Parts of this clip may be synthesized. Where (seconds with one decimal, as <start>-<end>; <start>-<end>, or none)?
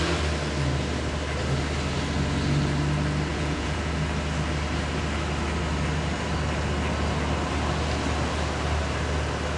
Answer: 3.3-3.9